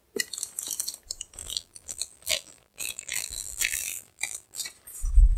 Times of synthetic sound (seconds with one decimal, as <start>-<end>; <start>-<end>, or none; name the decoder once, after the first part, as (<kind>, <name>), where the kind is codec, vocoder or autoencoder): 1.4-4.6 (vocoder, BigVGAN v2)